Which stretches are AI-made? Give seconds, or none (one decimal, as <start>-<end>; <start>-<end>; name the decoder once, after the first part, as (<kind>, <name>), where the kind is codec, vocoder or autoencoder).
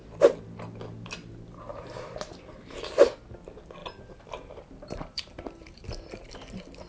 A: 1.7-2.2 (vocoder, BigVGAN v2); 3.8-6.3